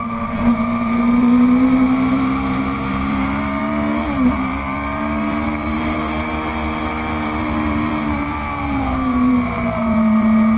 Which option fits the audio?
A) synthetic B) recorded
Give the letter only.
A